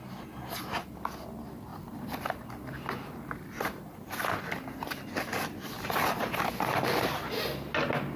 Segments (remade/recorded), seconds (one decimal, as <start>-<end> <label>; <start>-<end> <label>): 0.0-1.7 recorded; 1.7-4.1 remade; 4.1-5.3 recorded; 5.3-6.8 remade; 6.8-8.2 recorded